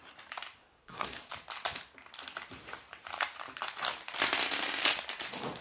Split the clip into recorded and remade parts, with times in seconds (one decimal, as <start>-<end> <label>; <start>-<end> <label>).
0.0-0.6 recorded; 0.6-1.3 remade; 1.3-5.6 recorded